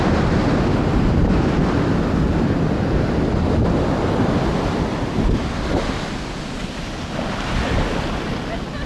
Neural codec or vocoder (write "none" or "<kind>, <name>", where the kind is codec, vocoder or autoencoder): none